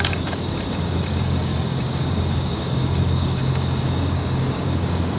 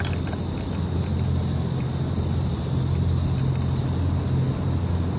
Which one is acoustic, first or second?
second